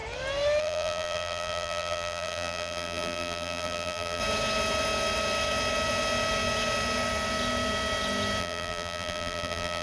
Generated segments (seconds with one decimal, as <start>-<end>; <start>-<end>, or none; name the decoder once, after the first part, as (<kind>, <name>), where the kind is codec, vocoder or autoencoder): 0.6-4.2 (vocoder, BigVGAN v2); 8.4-9.8